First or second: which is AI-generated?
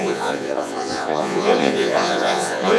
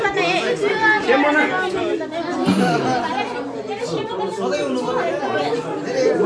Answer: first